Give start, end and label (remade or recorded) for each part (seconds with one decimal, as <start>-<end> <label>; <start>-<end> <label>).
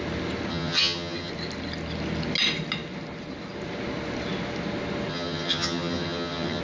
0.0-0.5 recorded; 0.5-1.3 remade; 1.3-5.1 recorded; 5.1-6.6 remade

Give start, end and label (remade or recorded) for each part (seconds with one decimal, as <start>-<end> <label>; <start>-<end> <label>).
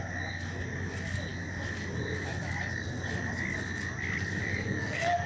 0.0-4.5 recorded; 4.5-5.3 remade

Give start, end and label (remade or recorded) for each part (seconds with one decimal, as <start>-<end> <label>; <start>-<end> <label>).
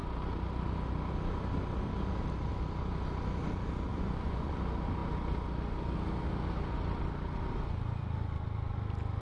0.0-3.9 recorded; 3.9-4.6 remade; 4.6-9.2 recorded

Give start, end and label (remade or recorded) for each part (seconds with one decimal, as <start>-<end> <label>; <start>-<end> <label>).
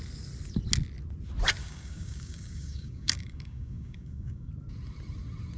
0.0-1.6 recorded; 1.6-4.5 remade; 4.5-5.6 recorded